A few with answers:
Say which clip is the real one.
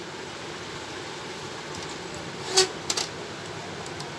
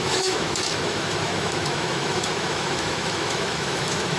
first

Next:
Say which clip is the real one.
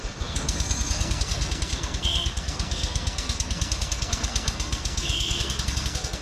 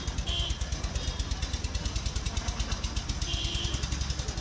second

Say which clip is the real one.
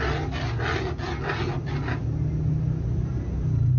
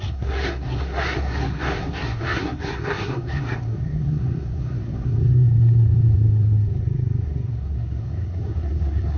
first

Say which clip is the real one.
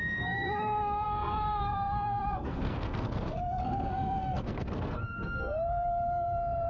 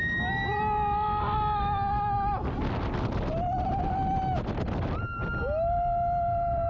second